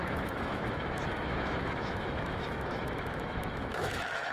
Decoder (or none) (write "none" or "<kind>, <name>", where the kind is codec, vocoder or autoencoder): autoencoder, DAC-VAE